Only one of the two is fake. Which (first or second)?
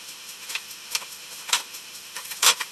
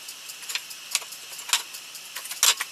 first